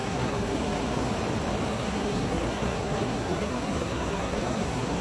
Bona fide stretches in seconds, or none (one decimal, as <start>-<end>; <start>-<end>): 1.1-1.7